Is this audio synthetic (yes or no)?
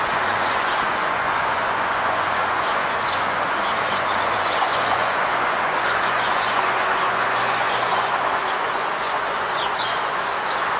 yes